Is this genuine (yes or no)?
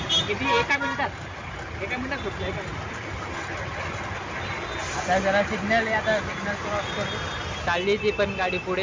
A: yes